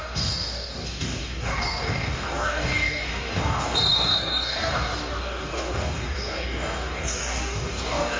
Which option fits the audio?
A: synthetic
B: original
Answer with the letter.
A